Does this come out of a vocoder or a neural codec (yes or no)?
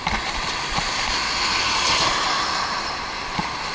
no